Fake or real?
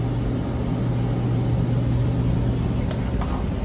real